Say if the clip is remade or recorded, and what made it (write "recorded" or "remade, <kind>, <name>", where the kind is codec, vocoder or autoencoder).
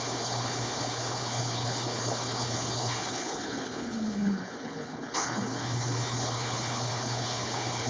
remade, codec, HILCodec